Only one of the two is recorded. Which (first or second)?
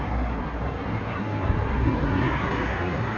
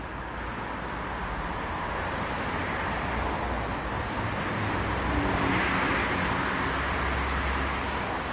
second